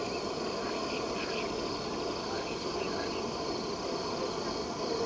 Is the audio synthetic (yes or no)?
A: no